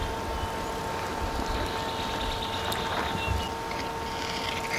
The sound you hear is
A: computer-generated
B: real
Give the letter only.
B